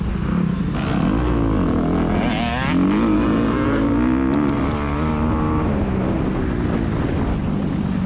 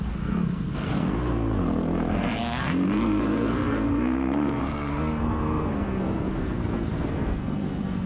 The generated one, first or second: second